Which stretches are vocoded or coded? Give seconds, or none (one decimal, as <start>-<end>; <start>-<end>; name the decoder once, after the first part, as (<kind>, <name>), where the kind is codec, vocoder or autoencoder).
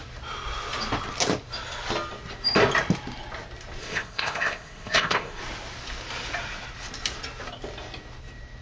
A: 3.8-5.4 (codec, ZipCodec)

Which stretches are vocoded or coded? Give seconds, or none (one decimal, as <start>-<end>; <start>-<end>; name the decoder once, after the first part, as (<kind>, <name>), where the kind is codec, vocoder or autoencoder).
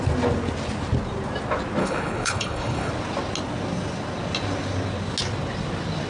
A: 1.8-2.9 (codec, HILCodec)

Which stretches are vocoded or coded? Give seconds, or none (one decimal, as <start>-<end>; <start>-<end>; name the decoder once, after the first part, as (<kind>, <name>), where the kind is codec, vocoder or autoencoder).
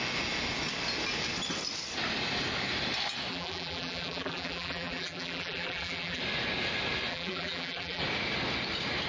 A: 3.3-6.2 (vocoder, BigVGAN v2); 7.1-8.0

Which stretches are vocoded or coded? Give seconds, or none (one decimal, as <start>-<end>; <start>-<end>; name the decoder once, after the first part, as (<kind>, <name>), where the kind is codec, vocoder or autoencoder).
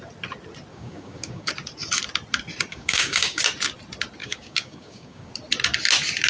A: 0.7-1.5 (codec, DAC); 2.7-3.4; 4.2-5.3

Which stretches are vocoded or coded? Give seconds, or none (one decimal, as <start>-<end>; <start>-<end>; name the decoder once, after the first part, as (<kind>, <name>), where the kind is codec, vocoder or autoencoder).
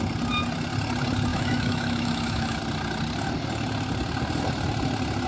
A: 1.3-2.6 (autoencoder, DAC-VAE)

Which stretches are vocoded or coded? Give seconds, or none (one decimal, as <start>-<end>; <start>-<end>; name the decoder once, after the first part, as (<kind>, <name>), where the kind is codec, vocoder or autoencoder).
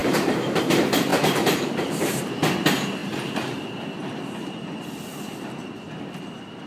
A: 0.0-0.6 (vocoder, BigVGAN v2); 1.1-2.4; 3.0-3.6